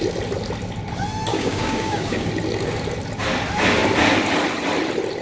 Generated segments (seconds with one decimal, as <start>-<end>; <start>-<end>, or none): 1.3-2.3

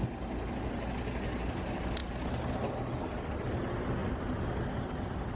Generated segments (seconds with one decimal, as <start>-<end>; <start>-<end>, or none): none

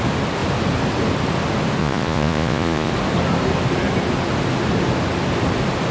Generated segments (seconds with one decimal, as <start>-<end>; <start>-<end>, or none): 1.8-2.9

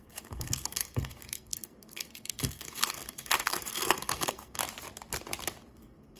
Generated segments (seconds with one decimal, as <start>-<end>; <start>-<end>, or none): 0.0-4.6; 5.7-6.2

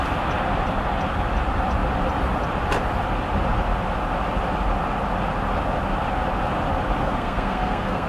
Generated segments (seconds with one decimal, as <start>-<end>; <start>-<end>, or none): 7.0-8.1